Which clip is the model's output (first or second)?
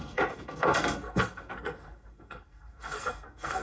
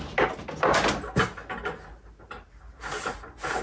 first